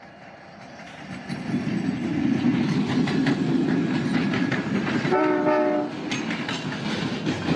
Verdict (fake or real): real